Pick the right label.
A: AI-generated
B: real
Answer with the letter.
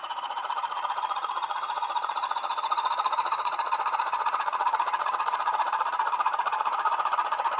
A